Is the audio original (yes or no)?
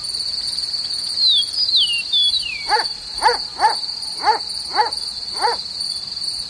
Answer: yes